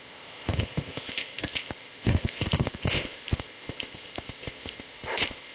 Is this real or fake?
fake